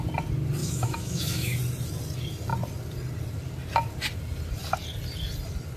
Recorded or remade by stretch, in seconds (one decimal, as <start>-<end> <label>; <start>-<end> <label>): 0.0-0.6 recorded; 0.6-1.6 remade; 1.6-5.8 recorded